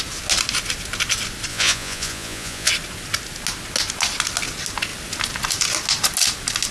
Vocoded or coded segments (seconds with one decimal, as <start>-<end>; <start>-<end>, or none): 1.5-2.7